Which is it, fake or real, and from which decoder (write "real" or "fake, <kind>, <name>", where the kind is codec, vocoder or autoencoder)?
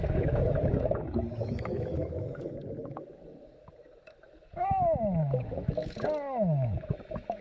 fake, autoencoder, DAC-VAE